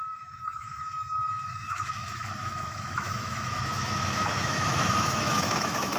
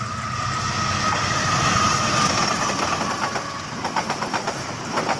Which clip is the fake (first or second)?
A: first